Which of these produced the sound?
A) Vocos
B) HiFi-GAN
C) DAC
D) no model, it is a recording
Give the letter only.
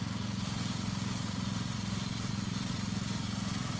A